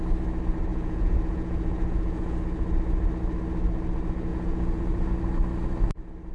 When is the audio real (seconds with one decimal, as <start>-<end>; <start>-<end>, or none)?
0.0-0.7; 2.4-4.3; 5.1-6.3